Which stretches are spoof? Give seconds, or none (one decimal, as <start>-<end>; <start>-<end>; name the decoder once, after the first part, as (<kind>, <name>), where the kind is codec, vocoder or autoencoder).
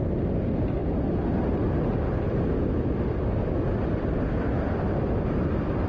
none